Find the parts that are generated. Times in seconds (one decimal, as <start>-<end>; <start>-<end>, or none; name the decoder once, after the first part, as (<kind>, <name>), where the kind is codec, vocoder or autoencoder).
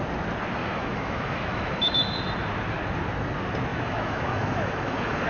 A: 0.6-2.2 (autoencoder, DAC-VAE); 3.7-5.3